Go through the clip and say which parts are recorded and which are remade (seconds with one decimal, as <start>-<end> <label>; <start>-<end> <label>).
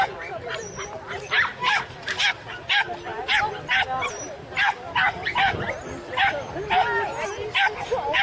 0.0-8.2 recorded